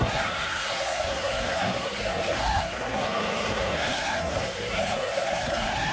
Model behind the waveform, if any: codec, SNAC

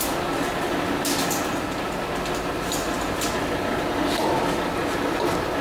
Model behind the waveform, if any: none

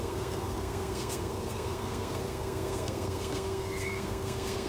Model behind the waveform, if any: codec, SNAC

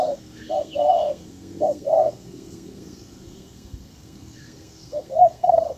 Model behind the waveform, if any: codec, SNAC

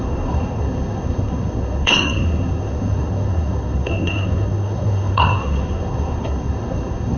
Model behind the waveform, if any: codec, SNAC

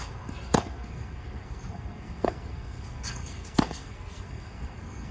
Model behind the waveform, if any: codec, SNAC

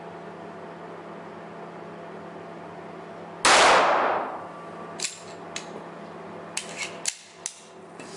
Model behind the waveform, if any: none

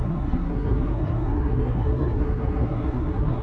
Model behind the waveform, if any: codec, SNAC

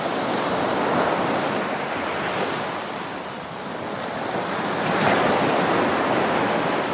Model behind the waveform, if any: none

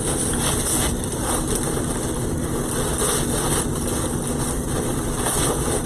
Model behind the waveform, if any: none